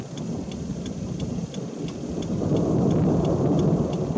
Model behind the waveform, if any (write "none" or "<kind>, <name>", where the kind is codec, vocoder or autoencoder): none